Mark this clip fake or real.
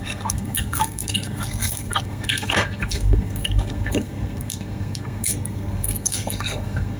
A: fake